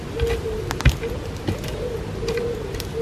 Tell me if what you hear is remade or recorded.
recorded